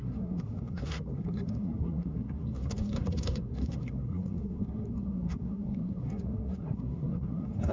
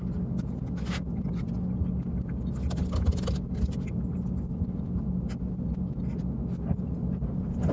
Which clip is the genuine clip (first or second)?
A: second